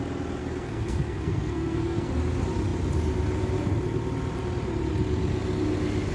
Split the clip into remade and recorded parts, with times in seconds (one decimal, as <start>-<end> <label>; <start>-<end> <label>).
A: 0.0-0.4 recorded; 0.4-2.1 remade; 2.1-6.1 recorded